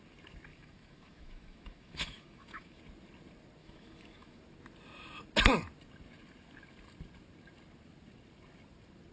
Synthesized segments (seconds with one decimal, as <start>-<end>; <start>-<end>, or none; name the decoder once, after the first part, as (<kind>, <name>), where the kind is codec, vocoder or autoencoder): 0.5-2.8 (autoencoder, DAC-VAE); 3.6-4.4